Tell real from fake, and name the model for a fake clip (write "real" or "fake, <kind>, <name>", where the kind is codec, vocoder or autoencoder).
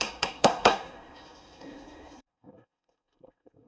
fake, codec, SNAC